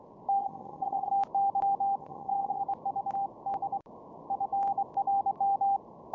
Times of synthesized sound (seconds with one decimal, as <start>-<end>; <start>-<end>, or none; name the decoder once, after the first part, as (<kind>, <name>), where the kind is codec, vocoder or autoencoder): 0.4-1.1 (vocoder, HiFi-GAN); 2.0-2.6